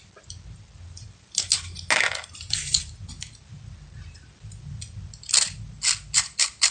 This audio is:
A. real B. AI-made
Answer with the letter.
A